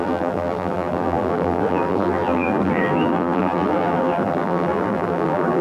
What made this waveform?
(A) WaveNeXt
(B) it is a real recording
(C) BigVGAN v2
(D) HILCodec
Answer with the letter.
C